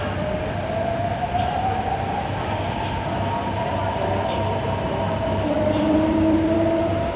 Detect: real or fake fake